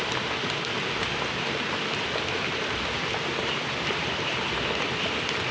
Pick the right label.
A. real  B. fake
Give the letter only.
A